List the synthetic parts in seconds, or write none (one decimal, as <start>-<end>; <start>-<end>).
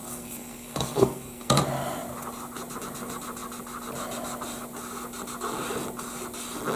0.0-1.6